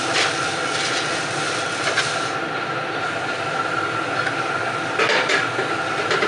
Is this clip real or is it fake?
real